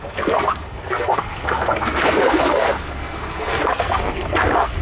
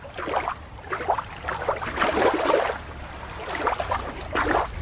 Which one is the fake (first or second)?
first